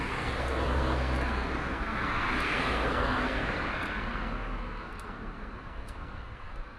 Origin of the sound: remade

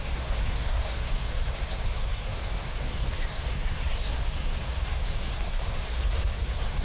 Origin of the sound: remade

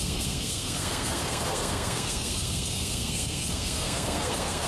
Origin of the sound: remade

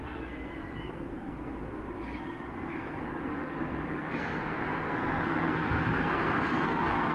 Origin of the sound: remade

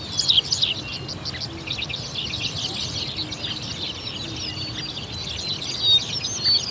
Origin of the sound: recorded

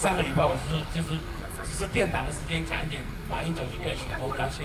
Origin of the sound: remade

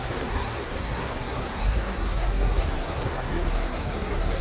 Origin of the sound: remade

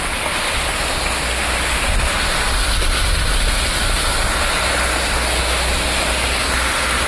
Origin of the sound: recorded